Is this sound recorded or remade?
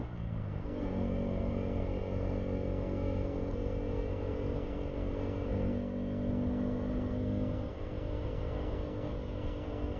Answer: remade